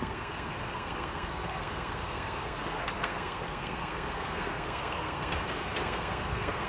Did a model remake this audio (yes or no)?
yes